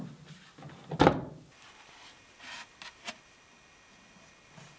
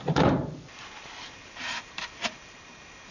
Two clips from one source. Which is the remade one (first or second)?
second